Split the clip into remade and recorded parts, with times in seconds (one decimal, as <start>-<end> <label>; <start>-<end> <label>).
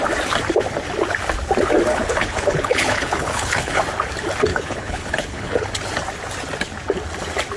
0.0-1.9 recorded; 1.9-3.8 remade; 3.8-4.5 recorded; 4.5-5.7 remade; 5.7-7.6 recorded